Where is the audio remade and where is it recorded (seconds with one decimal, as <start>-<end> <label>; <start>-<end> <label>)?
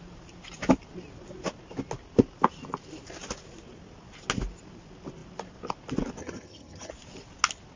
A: 0.0-6.2 recorded; 6.2-6.9 remade; 6.9-7.8 recorded